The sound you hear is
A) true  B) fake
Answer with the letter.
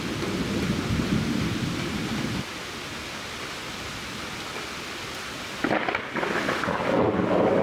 A